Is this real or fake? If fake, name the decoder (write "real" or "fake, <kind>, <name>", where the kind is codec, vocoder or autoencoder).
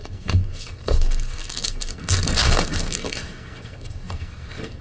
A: fake, codec, SNAC